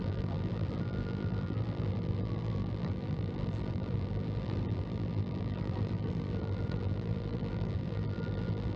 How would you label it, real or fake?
fake